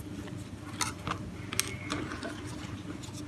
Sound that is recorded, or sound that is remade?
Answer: recorded